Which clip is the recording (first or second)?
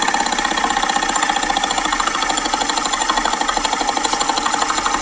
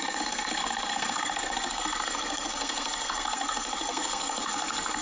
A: first